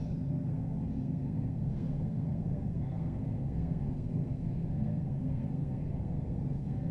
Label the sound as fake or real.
fake